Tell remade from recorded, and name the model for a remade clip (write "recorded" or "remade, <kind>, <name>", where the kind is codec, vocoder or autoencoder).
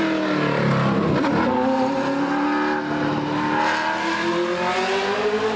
recorded